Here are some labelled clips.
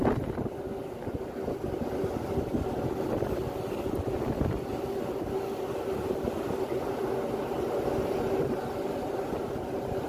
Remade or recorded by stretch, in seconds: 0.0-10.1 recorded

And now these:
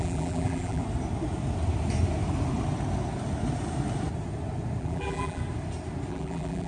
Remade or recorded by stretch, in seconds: 0.0-0.8 remade; 0.8-4.8 recorded; 4.8-5.4 remade; 5.4-6.1 recorded; 6.1-6.7 remade

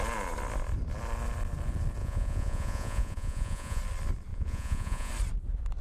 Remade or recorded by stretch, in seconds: 0.0-2.0 recorded; 2.0-3.8 remade; 3.8-4.3 recorded; 4.3-5.1 remade; 5.1-5.8 recorded